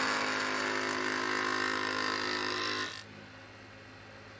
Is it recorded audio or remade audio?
recorded